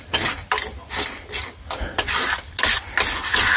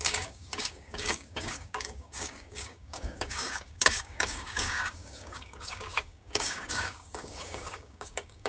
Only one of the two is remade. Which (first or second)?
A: second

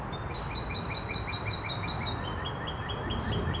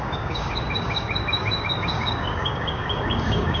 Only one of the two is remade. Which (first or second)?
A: second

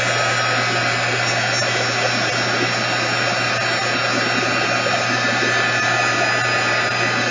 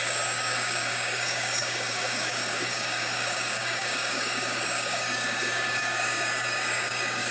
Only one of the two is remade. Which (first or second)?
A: second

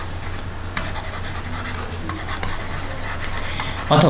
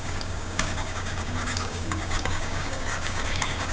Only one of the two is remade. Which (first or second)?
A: second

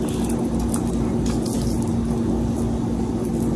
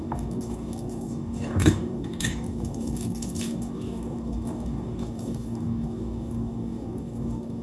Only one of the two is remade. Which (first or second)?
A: second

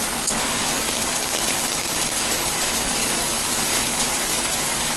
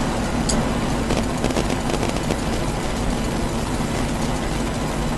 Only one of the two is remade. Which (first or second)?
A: first